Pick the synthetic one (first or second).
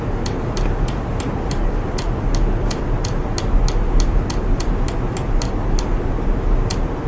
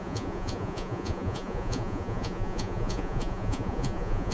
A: second